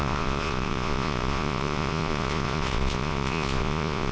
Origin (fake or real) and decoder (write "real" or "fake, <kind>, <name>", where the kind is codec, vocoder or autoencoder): fake, vocoder, Vocos